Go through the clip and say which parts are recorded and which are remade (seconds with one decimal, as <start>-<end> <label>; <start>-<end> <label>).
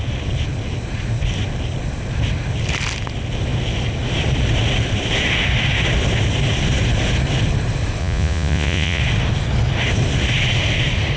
0.0-8.0 recorded; 8.0-9.0 remade; 9.0-11.2 recorded